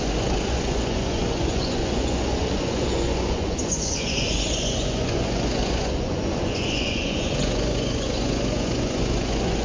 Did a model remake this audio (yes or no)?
yes